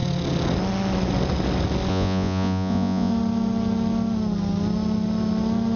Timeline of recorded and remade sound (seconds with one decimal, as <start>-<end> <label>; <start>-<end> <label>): 0.0-1.9 recorded; 1.9-3.1 remade; 3.1-5.8 recorded